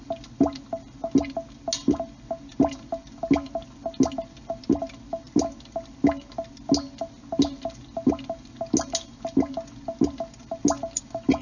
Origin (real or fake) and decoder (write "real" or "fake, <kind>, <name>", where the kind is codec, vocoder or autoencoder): real